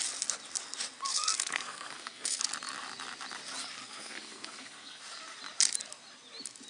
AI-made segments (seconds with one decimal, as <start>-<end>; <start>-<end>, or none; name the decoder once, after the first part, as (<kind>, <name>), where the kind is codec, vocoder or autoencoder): 1.1-2.4 (codec, SNAC); 3.8-5.0

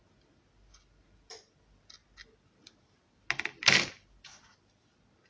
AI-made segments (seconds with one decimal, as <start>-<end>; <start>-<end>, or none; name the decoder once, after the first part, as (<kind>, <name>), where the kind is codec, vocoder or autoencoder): none

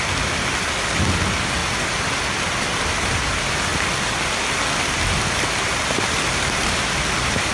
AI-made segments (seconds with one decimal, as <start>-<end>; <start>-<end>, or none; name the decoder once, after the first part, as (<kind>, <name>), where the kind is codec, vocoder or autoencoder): none

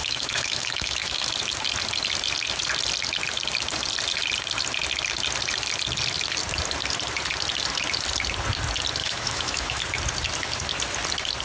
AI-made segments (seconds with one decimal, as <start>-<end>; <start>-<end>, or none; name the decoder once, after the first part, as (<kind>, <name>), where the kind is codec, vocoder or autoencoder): 0.0-1.3 (autoencoder, DAC-VAE); 9.0-9.8

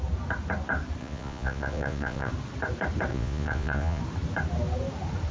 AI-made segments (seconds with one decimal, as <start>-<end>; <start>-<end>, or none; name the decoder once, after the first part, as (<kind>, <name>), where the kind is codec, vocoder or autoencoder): 1.0-2.3 (vocoder, Vocos); 3.1-4.0

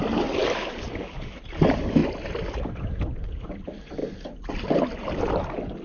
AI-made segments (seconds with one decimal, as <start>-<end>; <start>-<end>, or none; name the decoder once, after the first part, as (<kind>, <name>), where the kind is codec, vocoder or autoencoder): none